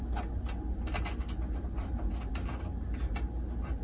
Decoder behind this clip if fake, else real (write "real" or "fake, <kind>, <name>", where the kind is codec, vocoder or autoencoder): real